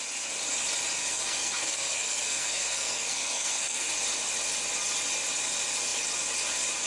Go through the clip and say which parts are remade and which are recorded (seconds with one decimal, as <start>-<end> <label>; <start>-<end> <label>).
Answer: 0.0-1.0 recorded; 1.0-3.9 remade; 3.9-6.9 recorded